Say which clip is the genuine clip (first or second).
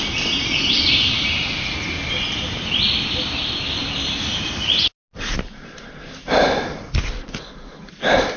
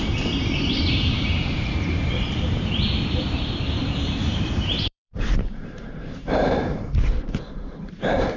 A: first